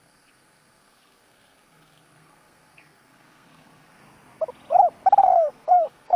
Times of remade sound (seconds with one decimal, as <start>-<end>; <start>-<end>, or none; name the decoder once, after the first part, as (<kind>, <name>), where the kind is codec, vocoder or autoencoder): 0.0-4.0 (codec, SNAC); 5.2-6.2